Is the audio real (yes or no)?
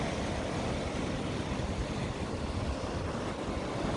yes